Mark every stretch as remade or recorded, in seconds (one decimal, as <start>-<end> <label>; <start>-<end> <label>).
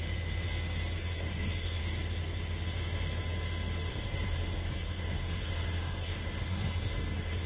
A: 0.0-1.0 recorded; 1.0-1.8 remade; 1.8-3.9 recorded; 3.9-7.5 remade